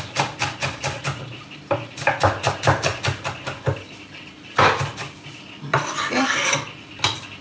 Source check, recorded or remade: recorded